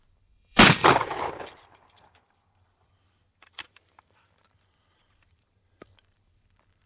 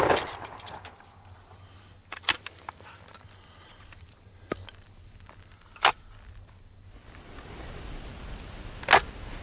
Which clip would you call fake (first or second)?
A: first